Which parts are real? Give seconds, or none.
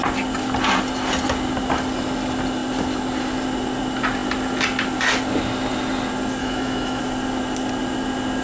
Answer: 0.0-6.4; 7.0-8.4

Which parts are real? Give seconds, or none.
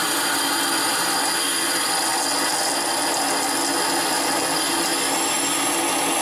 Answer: 0.0-6.2